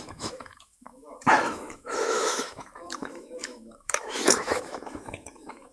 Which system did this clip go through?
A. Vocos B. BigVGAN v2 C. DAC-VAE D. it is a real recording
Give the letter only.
C